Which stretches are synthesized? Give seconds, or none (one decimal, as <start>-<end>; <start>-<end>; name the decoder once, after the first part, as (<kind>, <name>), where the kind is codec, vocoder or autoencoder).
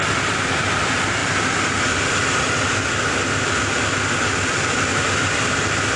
4.9-6.0 (vocoder, BigVGAN v2)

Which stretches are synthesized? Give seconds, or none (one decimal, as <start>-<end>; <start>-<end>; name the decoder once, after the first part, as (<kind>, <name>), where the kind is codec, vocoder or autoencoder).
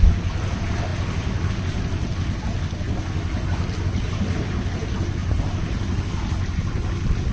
5.2-6.1 (vocoder, BigVGAN v2)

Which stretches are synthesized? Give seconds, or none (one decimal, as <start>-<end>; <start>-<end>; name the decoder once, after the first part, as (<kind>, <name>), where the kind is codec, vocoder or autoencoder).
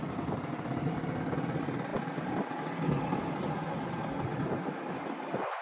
1.9-2.5 (vocoder, BigVGAN v2); 4.3-5.6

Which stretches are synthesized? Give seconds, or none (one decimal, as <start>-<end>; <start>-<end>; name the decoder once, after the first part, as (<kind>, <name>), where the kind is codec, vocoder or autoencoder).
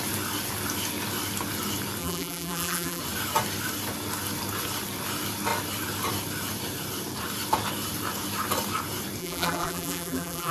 2.0-3.0 (vocoder, BigVGAN v2); 9.2-10.5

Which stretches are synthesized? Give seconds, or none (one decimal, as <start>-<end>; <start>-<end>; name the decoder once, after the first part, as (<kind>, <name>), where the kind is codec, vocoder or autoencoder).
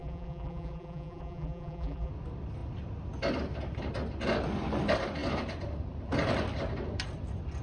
0.0-2.1 (vocoder, BigVGAN v2)